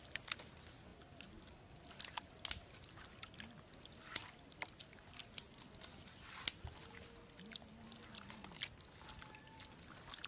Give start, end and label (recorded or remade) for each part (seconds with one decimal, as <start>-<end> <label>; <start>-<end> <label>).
0.0-0.9 recorded; 0.9-2.3 remade; 2.3-4.2 recorded; 4.2-5.2 remade; 5.2-10.3 recorded

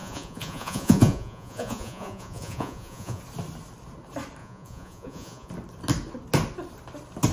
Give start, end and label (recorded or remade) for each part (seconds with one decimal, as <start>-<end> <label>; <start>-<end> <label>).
0.0-3.2 remade; 3.2-4.4 recorded; 4.4-5.5 remade; 5.5-7.3 recorded

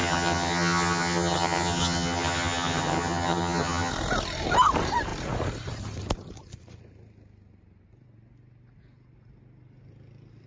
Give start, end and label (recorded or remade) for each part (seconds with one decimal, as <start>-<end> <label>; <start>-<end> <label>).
0.0-3.9 remade; 3.9-10.5 recorded

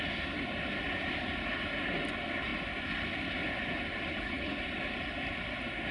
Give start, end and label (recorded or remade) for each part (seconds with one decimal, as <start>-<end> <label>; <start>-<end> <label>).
0.0-4.1 recorded; 4.1-4.6 remade; 4.6-5.9 recorded

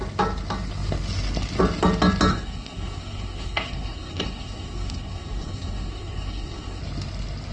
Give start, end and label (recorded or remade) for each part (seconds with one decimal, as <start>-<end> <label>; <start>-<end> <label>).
0.0-2.3 recorded; 2.3-6.8 remade; 6.8-7.5 recorded